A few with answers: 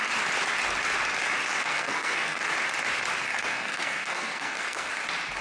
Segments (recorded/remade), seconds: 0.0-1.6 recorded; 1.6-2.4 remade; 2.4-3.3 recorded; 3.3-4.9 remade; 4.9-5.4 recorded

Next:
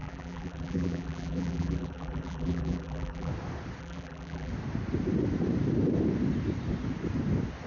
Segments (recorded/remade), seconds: 0.0-3.3 remade; 3.3-3.8 recorded; 3.8-4.5 remade; 4.5-7.7 recorded

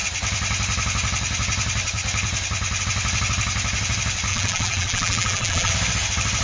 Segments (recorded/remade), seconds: 0.0-4.3 recorded; 4.3-5.7 remade; 5.7-6.4 recorded

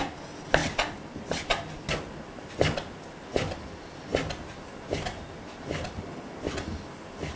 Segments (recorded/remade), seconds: 0.0-7.4 recorded

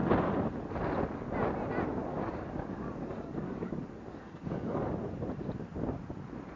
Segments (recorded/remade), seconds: 0.0-2.1 recorded; 2.1-4.9 remade; 4.9-6.6 recorded

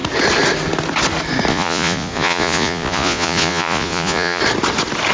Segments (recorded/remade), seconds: 0.0-1.5 recorded; 1.5-4.4 remade; 4.4-5.1 recorded

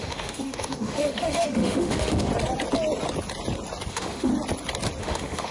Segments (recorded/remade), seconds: 0.0-2.3 remade; 2.3-3.9 recorded; 3.9-4.3 remade; 4.3-5.0 recorded; 5.0-5.5 remade

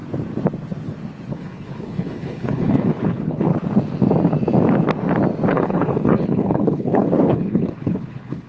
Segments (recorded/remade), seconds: 0.0-1.3 recorded; 1.3-3.5 remade; 3.5-5.5 recorded; 5.5-8.5 remade